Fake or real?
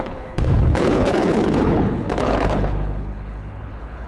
fake